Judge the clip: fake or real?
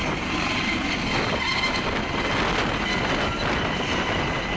real